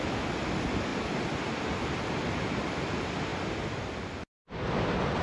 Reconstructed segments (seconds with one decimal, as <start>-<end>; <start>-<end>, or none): none